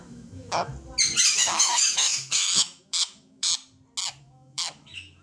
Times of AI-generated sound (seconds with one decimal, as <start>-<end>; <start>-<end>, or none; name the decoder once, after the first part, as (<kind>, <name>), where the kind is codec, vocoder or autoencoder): 0.0-0.7 (autoencoder, DAC-VAE); 1.3-3.5; 4.2-5.2